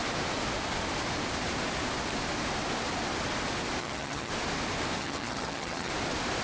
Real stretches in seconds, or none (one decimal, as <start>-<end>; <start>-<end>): 0.0-3.8; 4.3-5.0; 5.9-6.4